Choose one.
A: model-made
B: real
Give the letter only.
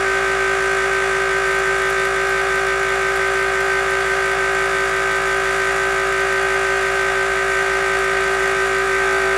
B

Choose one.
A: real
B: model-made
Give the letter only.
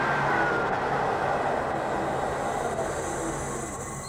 A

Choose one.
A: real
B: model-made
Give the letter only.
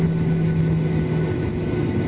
A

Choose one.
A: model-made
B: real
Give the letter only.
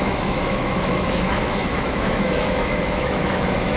A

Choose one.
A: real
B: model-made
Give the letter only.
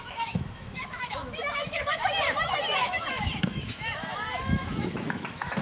B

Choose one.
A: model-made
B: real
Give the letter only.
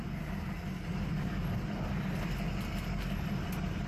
B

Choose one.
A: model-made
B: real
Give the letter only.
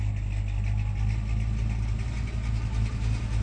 B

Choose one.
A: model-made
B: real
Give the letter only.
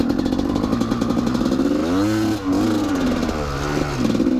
B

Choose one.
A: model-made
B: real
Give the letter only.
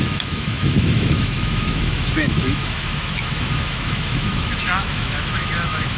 A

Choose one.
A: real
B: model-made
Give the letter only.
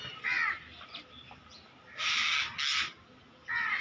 A